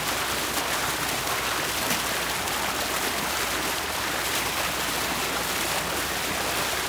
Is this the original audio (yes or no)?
yes